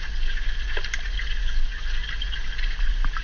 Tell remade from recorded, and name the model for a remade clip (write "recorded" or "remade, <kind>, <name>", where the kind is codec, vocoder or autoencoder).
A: recorded